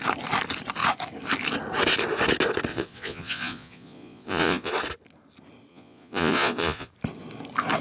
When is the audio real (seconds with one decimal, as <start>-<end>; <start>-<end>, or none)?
0.0-2.7; 4.7-5.7; 6.9-7.8